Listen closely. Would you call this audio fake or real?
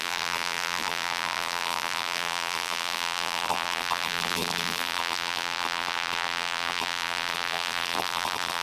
fake